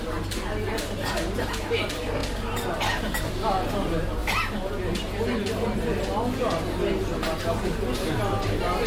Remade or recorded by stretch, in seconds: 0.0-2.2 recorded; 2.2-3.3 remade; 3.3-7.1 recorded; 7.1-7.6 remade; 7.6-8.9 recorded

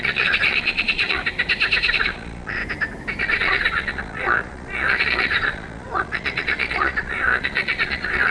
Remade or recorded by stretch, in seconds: 0.0-1.2 remade; 1.2-1.9 recorded; 1.9-2.6 remade; 2.6-3.2 recorded; 3.2-8.3 remade

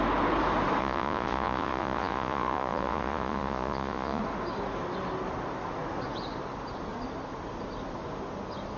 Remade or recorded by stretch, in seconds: 0.0-0.8 recorded; 0.8-4.2 remade; 4.2-8.8 recorded